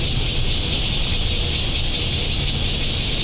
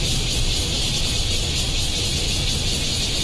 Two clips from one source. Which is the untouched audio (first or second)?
first